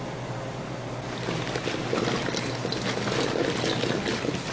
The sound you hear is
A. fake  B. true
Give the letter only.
B